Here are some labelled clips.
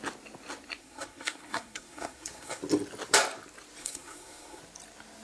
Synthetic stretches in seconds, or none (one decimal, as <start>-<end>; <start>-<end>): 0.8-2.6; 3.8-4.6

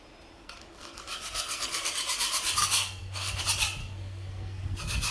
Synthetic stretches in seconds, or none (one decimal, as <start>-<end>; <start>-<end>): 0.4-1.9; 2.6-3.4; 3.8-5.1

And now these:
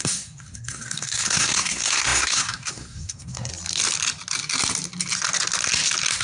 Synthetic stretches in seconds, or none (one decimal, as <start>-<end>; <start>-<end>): 0.0-3.5